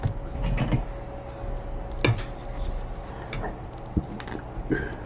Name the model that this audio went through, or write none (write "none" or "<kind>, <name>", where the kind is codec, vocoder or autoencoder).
none